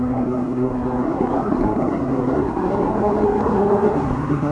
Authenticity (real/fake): fake